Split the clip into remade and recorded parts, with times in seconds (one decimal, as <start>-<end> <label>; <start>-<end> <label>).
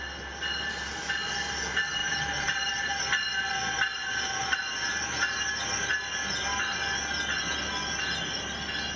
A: 0.0-2.0 recorded; 2.0-3.0 remade; 3.0-3.9 recorded; 3.9-5.9 remade; 5.9-9.0 recorded